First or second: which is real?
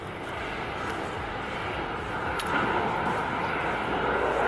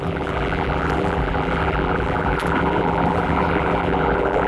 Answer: first